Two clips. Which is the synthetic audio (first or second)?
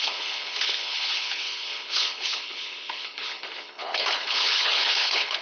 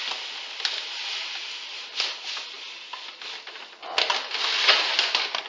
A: first